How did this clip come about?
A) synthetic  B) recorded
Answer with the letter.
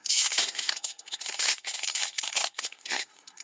A